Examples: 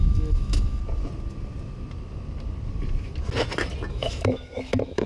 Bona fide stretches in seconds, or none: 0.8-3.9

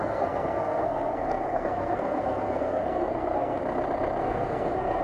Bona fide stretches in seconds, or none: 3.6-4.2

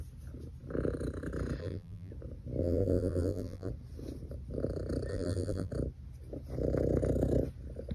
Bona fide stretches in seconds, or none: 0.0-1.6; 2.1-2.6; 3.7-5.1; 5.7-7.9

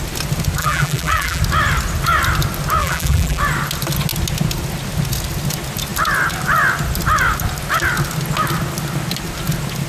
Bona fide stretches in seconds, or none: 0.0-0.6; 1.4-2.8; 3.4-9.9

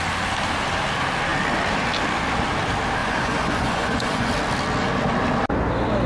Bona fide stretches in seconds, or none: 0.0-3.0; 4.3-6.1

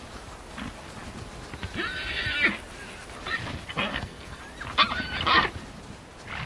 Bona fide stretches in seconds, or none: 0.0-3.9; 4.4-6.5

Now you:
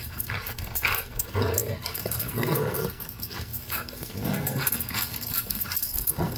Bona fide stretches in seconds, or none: none

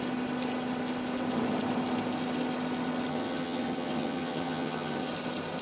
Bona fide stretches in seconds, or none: 0.0-3.1; 5.1-5.6